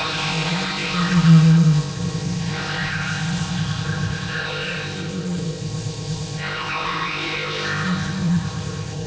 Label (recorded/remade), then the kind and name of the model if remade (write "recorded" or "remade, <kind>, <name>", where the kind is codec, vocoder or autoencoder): remade, codec, ZipCodec